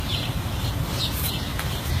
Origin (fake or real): fake